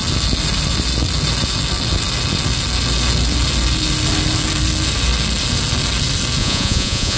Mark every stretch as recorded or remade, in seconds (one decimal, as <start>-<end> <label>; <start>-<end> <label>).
0.0-6.4 recorded; 6.4-7.2 remade